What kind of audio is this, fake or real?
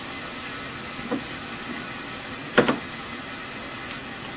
real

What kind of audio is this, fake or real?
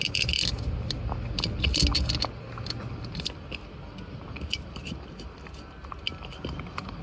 real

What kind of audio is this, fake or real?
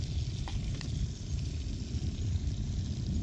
real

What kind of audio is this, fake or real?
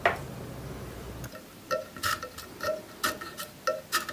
real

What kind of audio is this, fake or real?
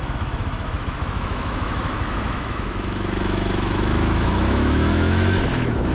fake